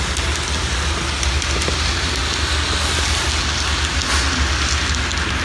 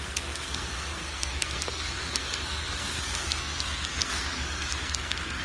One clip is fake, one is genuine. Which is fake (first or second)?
second